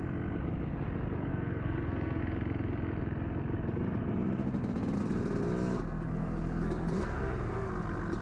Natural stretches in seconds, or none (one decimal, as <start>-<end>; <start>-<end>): 0.0-1.3; 2.2-5.7; 7.7-8.2